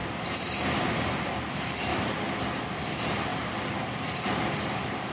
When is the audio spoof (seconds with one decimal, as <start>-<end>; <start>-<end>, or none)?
0.0-1.9; 2.4-5.1